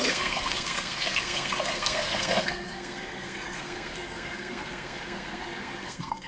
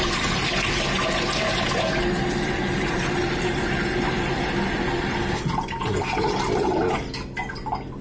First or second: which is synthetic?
first